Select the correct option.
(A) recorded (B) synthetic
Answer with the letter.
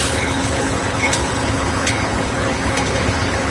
B